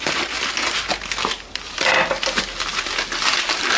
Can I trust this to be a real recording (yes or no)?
yes